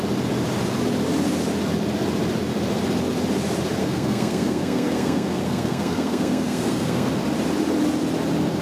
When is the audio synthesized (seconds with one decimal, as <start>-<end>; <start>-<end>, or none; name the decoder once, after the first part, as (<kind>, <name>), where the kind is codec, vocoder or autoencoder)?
3.8-7.1 (codec, SNAC)